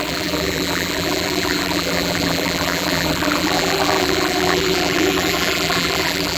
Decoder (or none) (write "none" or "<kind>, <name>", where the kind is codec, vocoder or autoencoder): vocoder, BigVGAN v2